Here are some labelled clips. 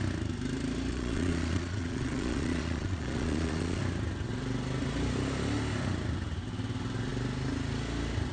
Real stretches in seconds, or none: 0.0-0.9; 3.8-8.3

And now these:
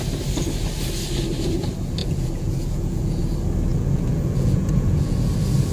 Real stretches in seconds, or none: 0.0-2.0; 3.2-3.7; 5.3-5.7

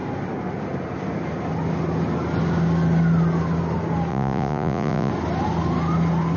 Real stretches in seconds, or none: 0.0-4.1; 5.1-6.4

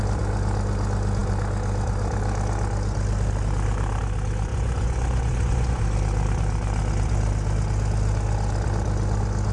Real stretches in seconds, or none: 0.0-4.5; 5.8-9.5

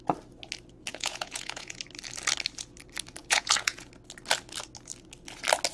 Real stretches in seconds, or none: 0.0-0.9; 1.8-3.2; 3.9-5.7

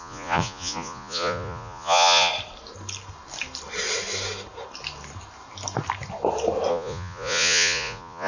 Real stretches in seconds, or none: 2.3-6.7

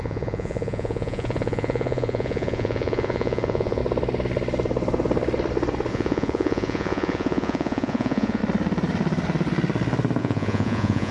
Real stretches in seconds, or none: 3.8-5.9; 8.4-10.2

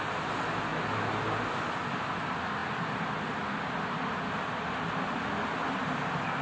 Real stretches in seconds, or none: 0.0-6.4